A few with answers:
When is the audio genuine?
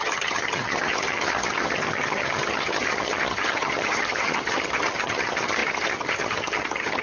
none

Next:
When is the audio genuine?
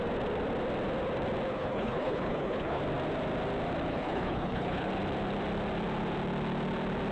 0.0-1.5; 2.8-3.9; 4.9-7.1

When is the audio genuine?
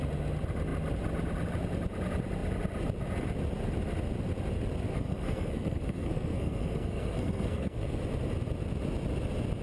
0.0-4.9; 8.0-9.6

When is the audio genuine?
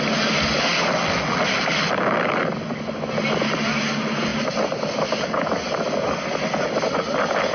0.0-7.5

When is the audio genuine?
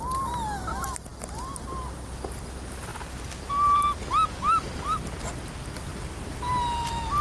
0.0-7.2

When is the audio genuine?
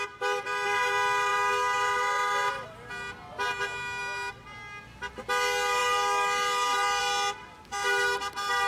0.0-8.7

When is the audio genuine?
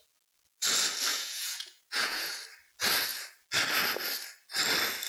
0.0-1.1; 2.3-5.1